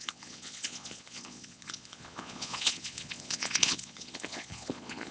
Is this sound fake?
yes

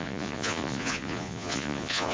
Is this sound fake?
yes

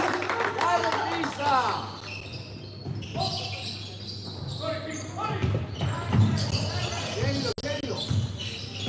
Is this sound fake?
no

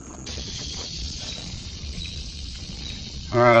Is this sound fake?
yes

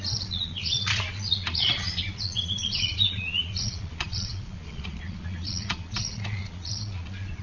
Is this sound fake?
yes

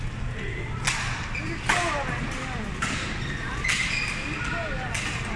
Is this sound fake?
no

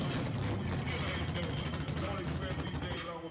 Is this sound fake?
no